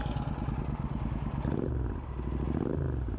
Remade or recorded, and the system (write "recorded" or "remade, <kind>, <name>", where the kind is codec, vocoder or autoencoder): recorded